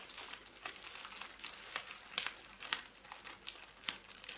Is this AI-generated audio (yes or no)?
no